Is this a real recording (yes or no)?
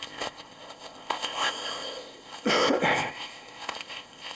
no